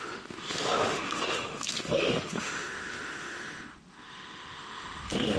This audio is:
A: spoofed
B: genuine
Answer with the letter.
A